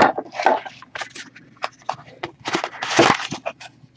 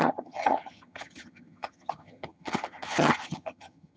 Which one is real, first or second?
first